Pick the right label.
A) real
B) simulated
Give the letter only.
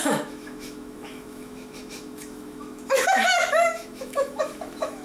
B